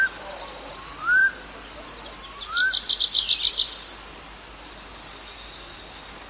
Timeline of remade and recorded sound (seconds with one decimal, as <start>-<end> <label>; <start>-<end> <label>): 0.0-6.3 recorded